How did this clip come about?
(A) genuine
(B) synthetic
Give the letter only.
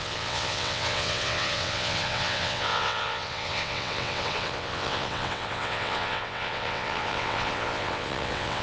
B